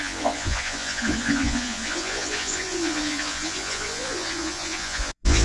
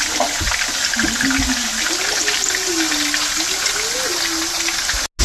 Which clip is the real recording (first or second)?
second